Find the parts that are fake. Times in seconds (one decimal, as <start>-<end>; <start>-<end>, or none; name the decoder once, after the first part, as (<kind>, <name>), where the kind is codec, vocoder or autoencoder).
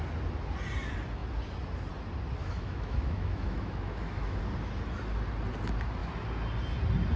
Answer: 2.4-4.4 (autoencoder, DAC-VAE)